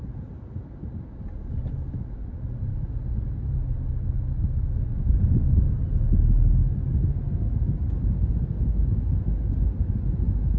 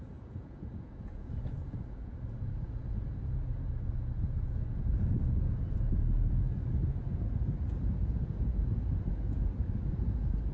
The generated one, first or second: second